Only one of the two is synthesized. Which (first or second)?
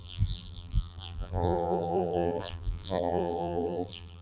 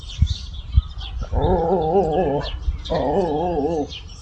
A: first